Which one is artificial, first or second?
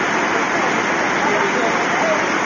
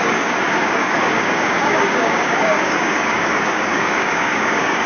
second